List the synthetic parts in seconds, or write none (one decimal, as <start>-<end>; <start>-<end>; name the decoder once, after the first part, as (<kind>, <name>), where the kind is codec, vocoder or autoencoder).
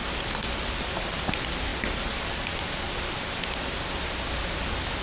none